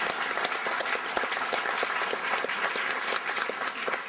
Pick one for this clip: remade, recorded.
recorded